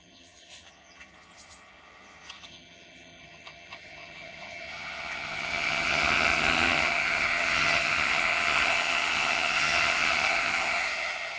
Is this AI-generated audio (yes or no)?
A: yes